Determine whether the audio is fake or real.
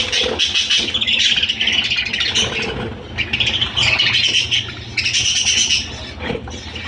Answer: real